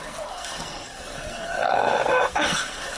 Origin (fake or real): fake